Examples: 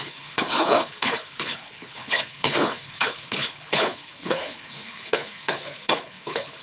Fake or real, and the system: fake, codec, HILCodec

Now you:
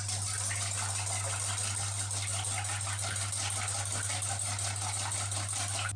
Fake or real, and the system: real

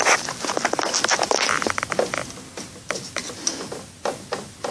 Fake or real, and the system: real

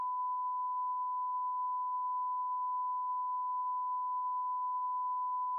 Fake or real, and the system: fake, autoencoder, DAC-VAE